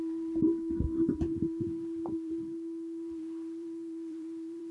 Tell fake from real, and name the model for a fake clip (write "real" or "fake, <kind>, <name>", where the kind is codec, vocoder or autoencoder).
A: fake, vocoder, BigVGAN v2